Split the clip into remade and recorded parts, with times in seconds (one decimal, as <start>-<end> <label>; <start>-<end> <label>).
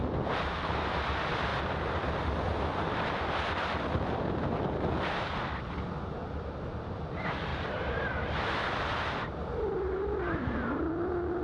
0.0-11.4 recorded